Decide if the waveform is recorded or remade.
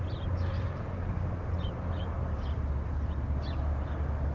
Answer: recorded